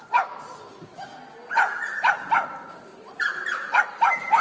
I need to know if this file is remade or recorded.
recorded